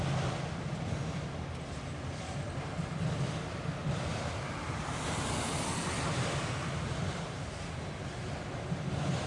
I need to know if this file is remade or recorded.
recorded